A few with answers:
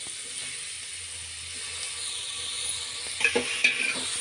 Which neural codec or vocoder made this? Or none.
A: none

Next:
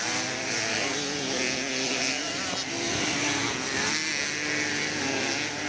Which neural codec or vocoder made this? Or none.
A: none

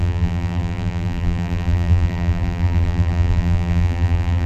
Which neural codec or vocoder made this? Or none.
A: vocoder, BigVGAN v2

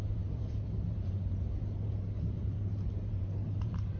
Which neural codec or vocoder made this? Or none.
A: vocoder, BigVGAN v2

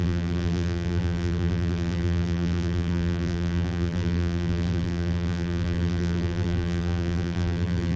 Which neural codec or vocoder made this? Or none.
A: vocoder, BigVGAN v2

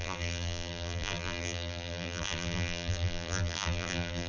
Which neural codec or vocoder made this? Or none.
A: vocoder, BigVGAN v2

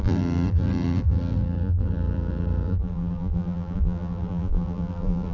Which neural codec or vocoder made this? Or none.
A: vocoder, BigVGAN v2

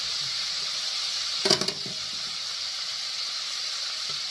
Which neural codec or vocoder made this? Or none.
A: vocoder, BigVGAN v2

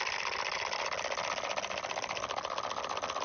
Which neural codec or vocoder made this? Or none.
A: none